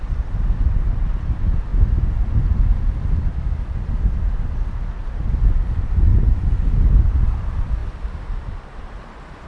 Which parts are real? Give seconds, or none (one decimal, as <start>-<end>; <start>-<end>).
0.0-9.5